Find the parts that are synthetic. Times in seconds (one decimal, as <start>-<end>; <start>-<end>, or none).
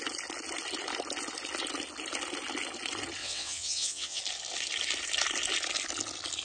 3.2-4.2